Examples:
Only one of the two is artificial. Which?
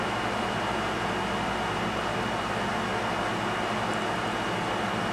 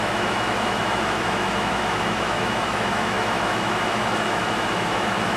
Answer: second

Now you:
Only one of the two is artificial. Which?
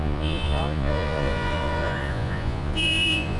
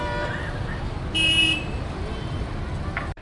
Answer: first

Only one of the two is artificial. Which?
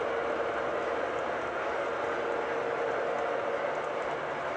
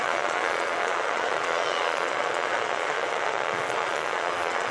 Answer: second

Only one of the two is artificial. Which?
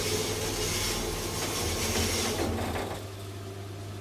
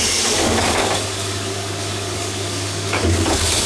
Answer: second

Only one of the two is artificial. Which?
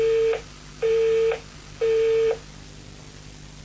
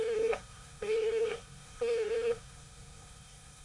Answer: second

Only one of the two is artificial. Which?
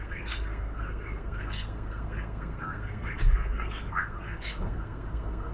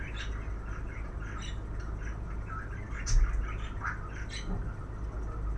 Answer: first